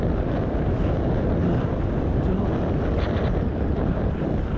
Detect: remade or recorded recorded